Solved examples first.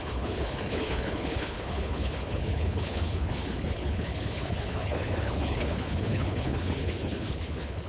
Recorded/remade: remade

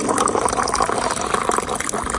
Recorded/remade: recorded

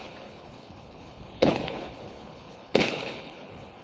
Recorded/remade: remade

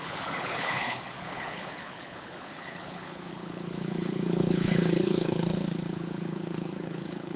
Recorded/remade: remade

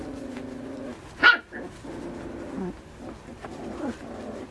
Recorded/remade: recorded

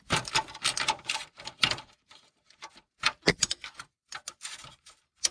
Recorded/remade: recorded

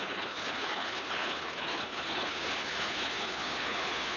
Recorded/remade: remade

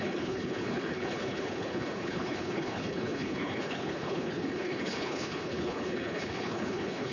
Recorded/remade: remade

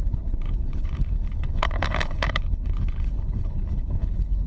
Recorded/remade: remade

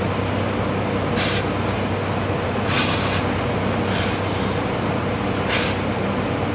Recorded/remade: recorded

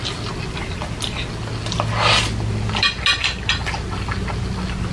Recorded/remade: recorded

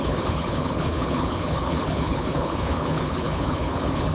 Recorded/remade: remade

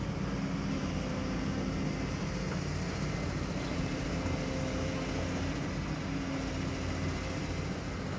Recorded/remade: recorded